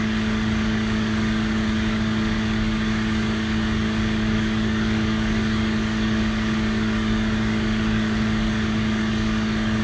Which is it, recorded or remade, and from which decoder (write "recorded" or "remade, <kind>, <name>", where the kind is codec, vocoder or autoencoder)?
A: remade, codec, DAC